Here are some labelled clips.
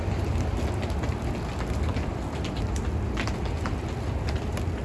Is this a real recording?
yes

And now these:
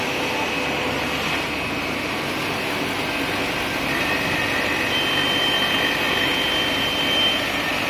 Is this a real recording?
yes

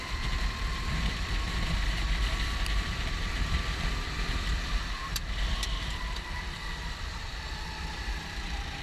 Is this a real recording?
no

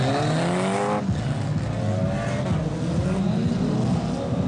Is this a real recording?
yes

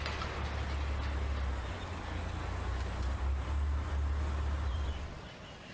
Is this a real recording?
yes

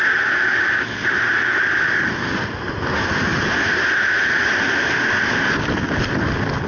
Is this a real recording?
yes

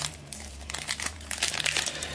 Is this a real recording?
no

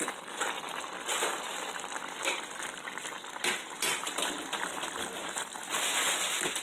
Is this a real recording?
yes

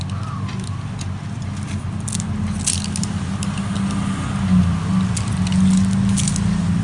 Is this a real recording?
yes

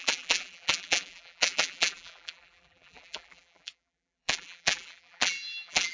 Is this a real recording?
no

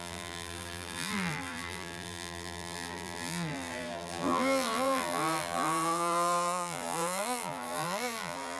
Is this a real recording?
no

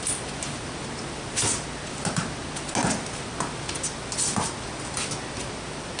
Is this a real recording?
yes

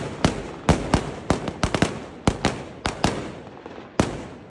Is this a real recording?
yes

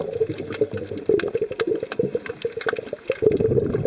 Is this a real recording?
yes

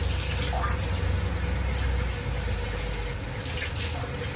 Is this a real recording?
yes